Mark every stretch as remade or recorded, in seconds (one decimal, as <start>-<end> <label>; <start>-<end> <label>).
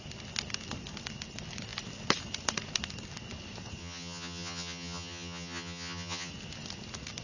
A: 0.0-3.8 recorded; 3.8-6.3 remade; 6.3-7.2 recorded